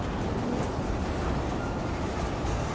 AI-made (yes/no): no